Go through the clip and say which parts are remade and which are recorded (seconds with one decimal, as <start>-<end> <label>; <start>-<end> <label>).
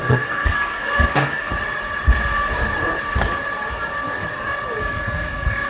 0.0-1.5 remade; 1.5-4.8 recorded; 4.8-5.7 remade